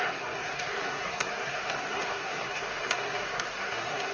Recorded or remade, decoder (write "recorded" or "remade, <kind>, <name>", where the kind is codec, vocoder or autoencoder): remade, codec, SNAC